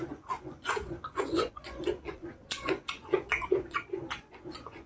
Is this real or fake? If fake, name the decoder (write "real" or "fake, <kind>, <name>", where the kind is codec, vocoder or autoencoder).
fake, vocoder, Vocos